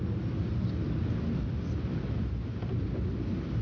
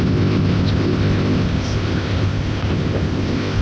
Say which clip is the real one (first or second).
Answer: first